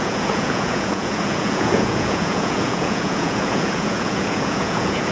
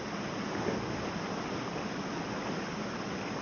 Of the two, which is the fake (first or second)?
first